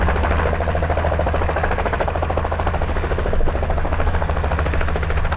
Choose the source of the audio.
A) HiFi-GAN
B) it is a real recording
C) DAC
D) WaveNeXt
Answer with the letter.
B